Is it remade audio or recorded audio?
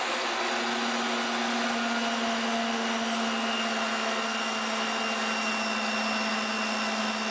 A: recorded